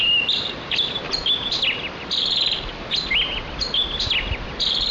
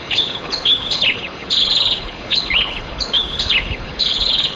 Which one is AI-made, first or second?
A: second